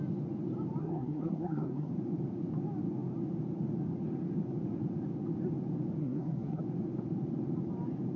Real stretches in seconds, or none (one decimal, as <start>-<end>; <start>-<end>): 0.0-0.8; 1.9-6.0; 6.6-8.2